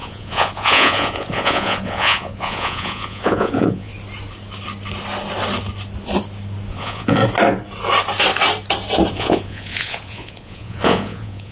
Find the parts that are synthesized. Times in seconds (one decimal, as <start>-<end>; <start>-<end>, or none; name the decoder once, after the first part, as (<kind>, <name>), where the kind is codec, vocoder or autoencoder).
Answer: 0.0-3.9 (vocoder, Vocos); 6.7-7.2; 9.1-11.5